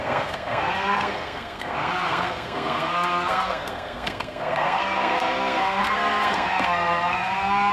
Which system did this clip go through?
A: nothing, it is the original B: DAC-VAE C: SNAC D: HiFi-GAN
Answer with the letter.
C